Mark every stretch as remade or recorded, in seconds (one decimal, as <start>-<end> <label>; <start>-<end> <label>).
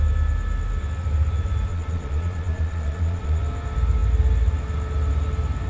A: 0.0-1.7 recorded; 1.7-3.4 remade; 3.4-5.7 recorded